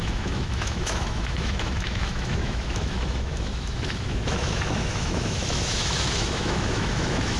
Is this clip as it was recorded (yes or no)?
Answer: no